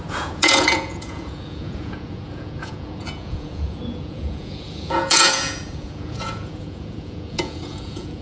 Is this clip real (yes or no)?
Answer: no